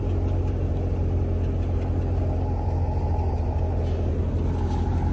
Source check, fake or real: real